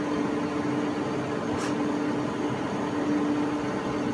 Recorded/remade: recorded